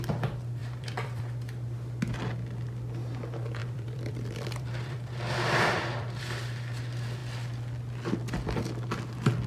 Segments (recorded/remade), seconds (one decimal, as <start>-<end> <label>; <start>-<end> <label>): 0.0-0.6 recorded; 0.6-1.2 remade; 1.2-3.6 recorded; 3.6-6.2 remade; 6.2-9.5 recorded